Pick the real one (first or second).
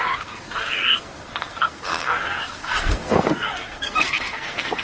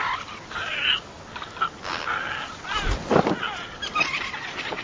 second